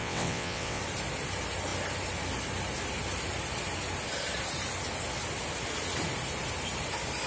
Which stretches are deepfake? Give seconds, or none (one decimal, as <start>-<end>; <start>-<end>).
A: 0.0-0.8